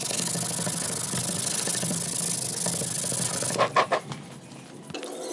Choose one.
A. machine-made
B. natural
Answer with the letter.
B